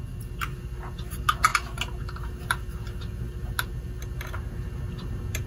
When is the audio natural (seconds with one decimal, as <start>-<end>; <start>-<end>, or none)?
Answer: 0.0-5.5